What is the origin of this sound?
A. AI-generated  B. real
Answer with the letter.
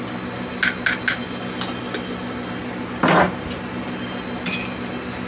B